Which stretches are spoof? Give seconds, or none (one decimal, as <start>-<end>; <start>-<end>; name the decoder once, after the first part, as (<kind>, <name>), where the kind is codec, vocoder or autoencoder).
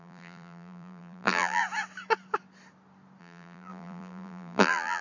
0.0-1.6 (vocoder, BigVGAN v2); 3.2-5.0